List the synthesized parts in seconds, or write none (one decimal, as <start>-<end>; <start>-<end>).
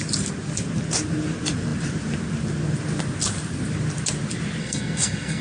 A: 4.6-5.4